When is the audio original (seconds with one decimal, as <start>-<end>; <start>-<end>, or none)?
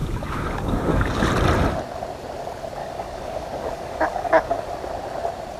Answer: 1.3-2.8; 4.7-5.6